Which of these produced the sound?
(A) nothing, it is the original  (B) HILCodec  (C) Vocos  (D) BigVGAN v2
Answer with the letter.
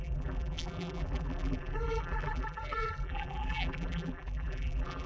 D